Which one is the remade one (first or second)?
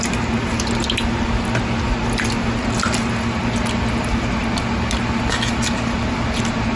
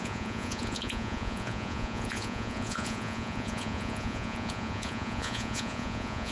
second